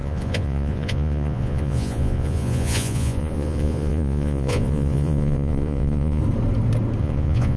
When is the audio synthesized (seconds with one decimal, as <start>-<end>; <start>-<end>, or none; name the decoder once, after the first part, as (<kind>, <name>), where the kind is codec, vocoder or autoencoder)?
0.0-6.2 (vocoder, Vocos); 7.0-7.6